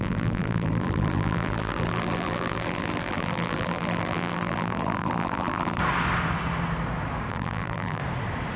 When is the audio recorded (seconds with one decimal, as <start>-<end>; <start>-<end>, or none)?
5.8-7.3; 8.0-8.6